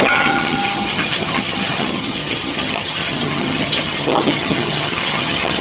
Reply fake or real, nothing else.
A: fake